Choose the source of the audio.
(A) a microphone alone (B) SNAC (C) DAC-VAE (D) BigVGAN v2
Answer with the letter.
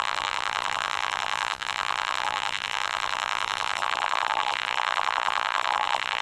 D